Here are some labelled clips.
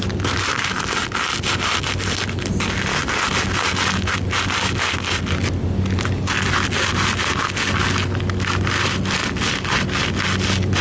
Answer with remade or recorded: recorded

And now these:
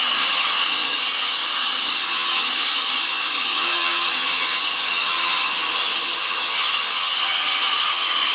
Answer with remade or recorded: remade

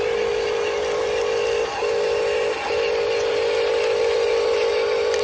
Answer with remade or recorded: recorded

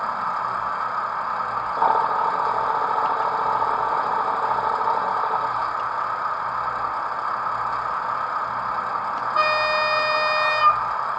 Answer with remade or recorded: recorded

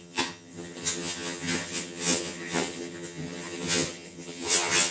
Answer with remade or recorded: remade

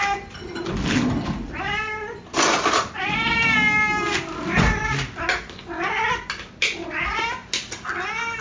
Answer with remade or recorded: recorded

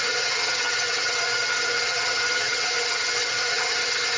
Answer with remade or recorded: remade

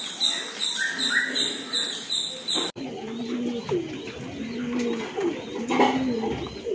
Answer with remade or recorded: recorded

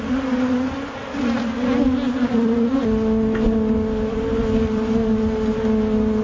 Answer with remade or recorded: recorded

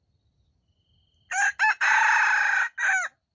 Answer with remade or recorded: recorded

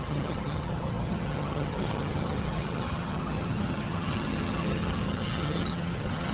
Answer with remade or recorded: remade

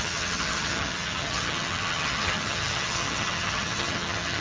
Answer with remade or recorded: remade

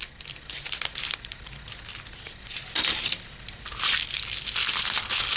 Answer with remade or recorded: recorded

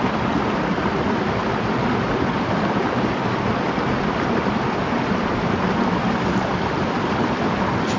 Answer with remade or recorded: recorded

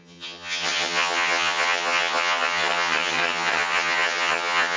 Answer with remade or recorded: remade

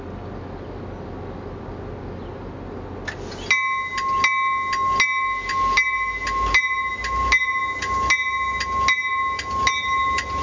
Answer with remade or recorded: recorded